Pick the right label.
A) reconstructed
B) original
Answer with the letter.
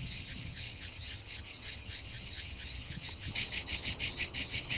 A